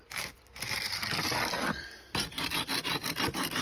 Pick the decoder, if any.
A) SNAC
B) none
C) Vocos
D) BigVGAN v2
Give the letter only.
B